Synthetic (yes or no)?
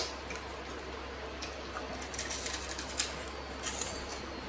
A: no